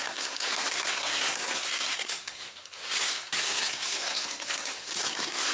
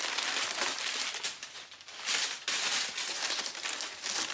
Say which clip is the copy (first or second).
first